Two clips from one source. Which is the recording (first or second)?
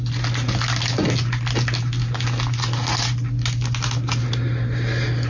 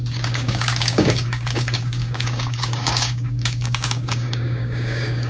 first